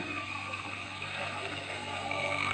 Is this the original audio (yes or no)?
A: no